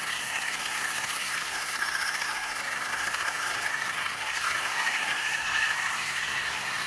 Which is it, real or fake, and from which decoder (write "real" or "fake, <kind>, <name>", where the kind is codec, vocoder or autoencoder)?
fake, codec, SNAC